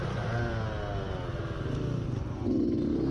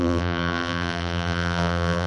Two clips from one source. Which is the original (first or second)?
first